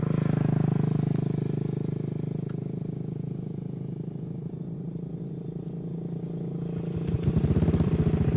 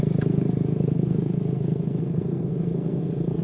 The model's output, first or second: second